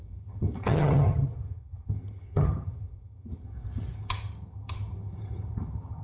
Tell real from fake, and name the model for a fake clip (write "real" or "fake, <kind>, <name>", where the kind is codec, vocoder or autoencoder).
fake, vocoder, HiFi-GAN